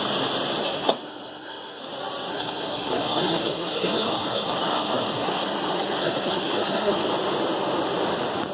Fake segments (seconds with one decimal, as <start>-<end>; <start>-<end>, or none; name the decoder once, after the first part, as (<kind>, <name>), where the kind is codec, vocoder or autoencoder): 0.6-1.8 (codec, SNAC); 2.3-7.1